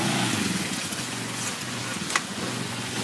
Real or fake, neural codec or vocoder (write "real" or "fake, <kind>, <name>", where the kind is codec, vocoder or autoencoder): fake, vocoder, Vocos